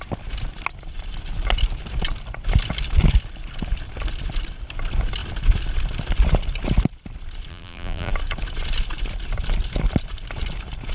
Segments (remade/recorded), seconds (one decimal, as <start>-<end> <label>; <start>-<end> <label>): 0.0-7.5 recorded; 7.5-8.1 remade; 8.1-10.9 recorded